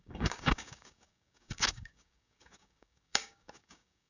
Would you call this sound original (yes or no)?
no